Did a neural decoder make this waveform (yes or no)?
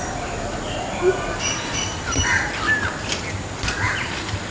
no